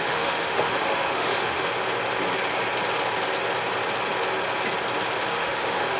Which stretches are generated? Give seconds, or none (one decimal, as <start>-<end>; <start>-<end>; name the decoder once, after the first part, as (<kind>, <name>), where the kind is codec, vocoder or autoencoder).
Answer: 0.0-1.7 (autoencoder, DAC-VAE); 5.3-6.0